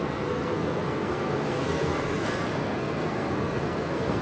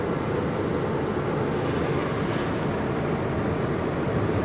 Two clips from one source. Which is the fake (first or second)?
first